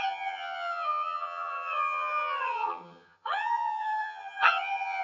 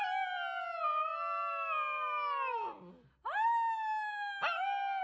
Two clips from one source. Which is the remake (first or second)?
first